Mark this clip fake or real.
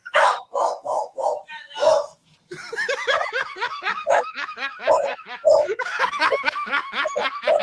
fake